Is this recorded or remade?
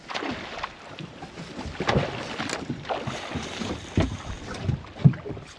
recorded